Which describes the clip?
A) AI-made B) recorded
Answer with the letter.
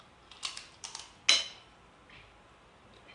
B